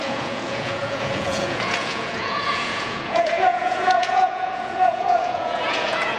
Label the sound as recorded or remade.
remade